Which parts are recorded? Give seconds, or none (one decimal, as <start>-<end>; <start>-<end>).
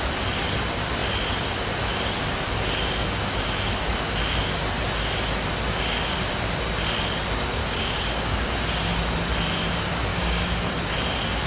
0.0-7.6; 8.5-10.1; 10.8-11.5